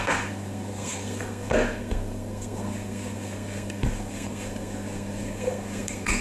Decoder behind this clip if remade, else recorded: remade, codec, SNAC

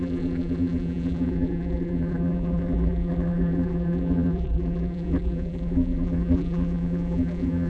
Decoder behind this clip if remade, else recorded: remade, vocoder, BigVGAN v2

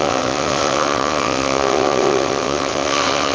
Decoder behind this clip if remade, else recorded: remade, vocoder, WaveNeXt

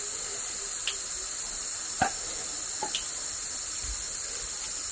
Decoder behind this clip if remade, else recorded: recorded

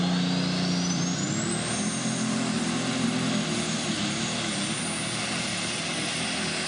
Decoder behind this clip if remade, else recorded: recorded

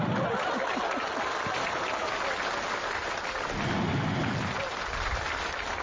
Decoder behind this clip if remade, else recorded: recorded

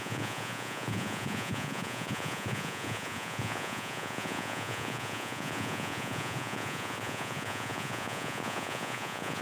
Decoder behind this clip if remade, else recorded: remade, vocoder, Vocos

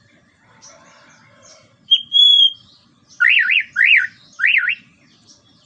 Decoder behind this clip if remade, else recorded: remade, vocoder, BigVGAN v2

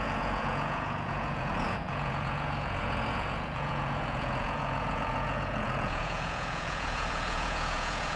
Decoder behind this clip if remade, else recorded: remade, vocoder, Vocos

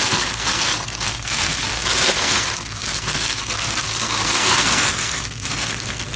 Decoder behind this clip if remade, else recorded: remade, codec, SNAC